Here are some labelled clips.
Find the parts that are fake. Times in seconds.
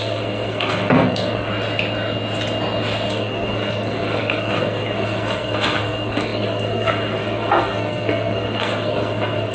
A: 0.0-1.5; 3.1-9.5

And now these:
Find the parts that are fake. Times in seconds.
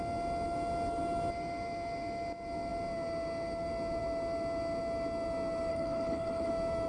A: 5.7-6.5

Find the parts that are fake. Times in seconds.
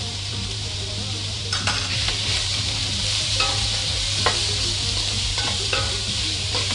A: 0.0-3.9; 5.2-6.7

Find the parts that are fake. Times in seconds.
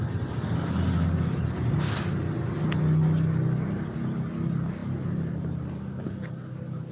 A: none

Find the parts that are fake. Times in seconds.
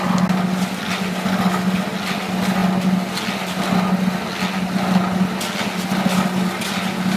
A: none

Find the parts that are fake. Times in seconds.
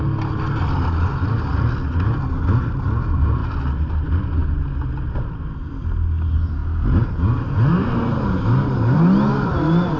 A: none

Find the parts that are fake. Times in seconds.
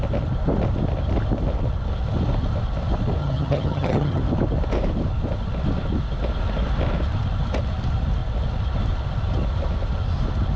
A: 3.2-4.2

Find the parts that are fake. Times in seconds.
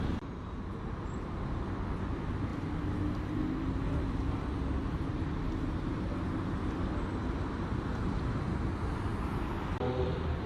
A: none